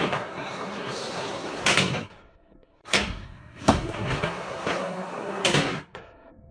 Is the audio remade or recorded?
remade